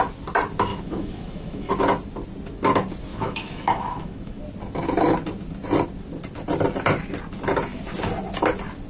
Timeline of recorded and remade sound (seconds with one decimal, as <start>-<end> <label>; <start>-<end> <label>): 0.0-0.7 recorded; 0.7-1.7 remade; 1.7-3.1 recorded; 3.1-4.4 remade; 4.4-8.9 recorded